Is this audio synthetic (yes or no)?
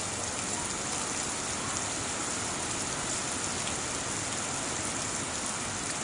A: no